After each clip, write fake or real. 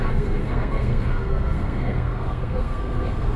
fake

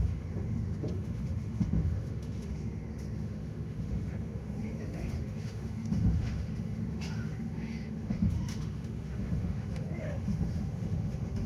fake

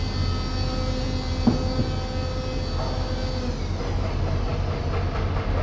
real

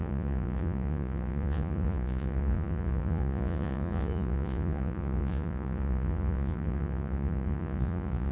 fake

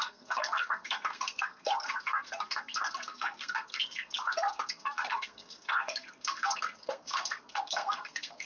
fake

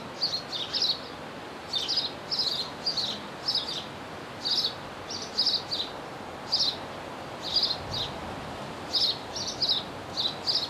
real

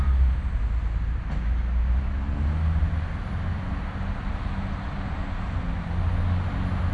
real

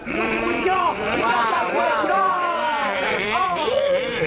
fake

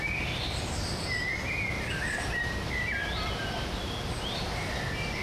real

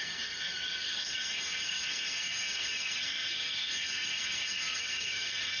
fake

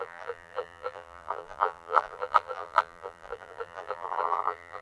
fake